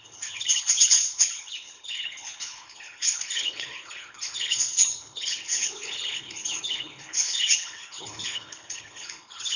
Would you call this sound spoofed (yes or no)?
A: yes